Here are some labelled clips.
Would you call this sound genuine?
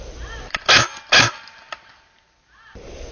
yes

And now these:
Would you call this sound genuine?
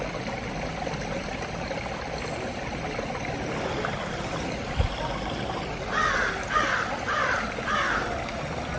yes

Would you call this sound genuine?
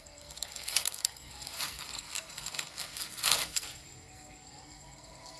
no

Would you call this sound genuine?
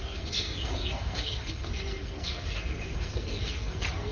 no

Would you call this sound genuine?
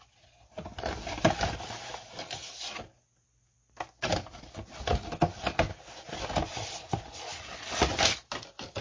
yes